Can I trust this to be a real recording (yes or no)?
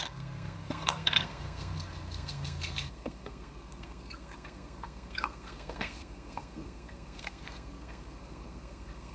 no